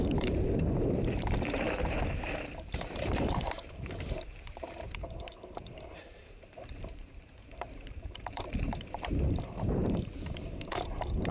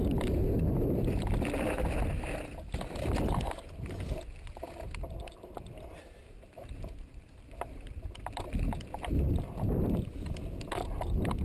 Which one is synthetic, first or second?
first